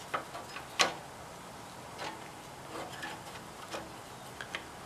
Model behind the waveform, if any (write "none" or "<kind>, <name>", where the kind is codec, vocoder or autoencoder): none